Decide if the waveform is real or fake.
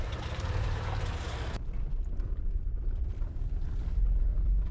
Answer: fake